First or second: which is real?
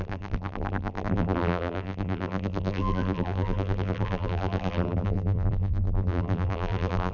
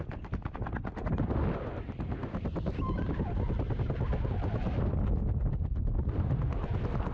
second